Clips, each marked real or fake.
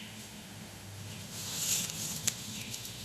fake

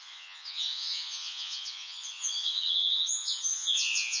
fake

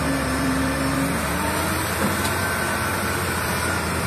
fake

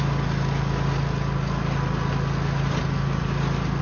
real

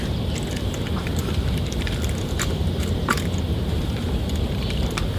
fake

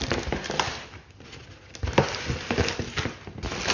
real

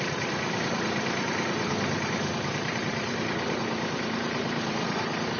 fake